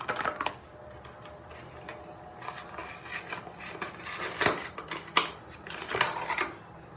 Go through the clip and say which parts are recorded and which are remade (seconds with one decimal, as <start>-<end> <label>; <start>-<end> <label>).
0.0-7.0 recorded